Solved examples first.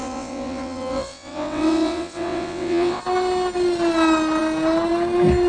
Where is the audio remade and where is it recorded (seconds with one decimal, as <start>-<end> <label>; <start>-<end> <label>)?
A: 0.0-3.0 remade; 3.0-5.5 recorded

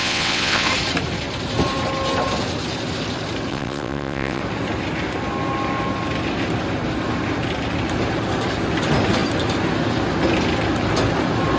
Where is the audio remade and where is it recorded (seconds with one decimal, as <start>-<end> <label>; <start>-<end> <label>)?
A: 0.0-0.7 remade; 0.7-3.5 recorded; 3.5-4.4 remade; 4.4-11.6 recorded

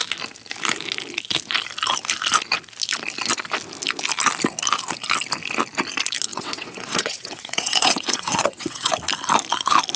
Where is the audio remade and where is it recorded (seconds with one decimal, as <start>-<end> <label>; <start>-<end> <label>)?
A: 0.0-6.3 recorded; 6.3-8.9 remade; 8.9-10.0 recorded